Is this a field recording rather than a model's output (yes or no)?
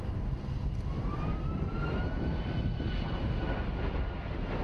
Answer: yes